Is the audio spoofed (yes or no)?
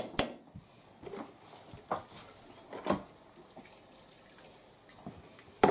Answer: no